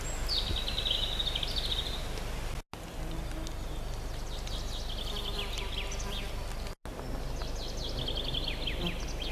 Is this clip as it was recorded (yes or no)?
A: yes